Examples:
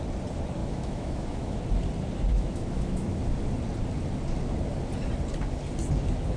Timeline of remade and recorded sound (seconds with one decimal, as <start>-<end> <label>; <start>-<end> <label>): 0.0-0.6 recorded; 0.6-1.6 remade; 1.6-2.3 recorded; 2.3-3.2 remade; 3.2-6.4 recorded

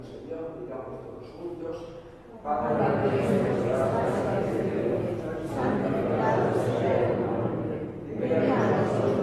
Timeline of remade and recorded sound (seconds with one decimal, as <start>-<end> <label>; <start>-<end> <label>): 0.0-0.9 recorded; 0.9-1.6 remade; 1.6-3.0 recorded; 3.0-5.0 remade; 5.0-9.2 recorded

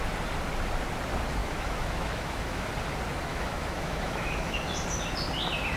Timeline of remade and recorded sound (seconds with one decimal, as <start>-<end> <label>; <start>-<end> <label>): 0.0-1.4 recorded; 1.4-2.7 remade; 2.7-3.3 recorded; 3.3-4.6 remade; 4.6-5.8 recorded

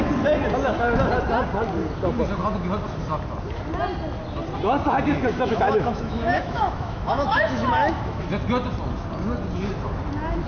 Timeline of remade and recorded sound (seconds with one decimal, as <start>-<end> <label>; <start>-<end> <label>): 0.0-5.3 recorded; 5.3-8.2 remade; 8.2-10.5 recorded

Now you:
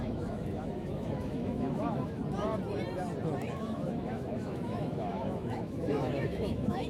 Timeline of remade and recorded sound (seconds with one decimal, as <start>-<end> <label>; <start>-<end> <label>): 0.0-2.2 remade; 2.2-3.4 recorded; 3.4-6.9 remade